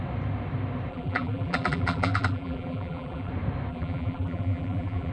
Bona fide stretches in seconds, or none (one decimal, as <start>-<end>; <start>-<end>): 0.0-0.9; 3.3-3.7